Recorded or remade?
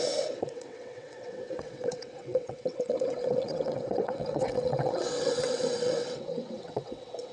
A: remade